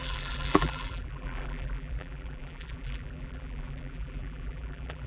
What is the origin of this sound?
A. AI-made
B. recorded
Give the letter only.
A